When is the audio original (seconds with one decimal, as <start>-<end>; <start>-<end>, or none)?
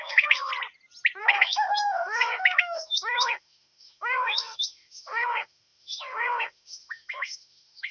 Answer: 0.5-1.2